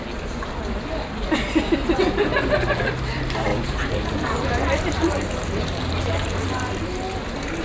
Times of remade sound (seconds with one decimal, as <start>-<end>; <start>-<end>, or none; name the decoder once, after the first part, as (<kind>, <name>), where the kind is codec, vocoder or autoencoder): 3.5-6.7 (vocoder, BigVGAN v2)